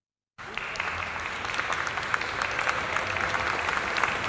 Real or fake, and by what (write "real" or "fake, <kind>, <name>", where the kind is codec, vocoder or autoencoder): real